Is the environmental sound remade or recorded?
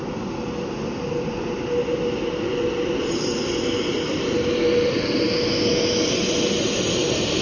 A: recorded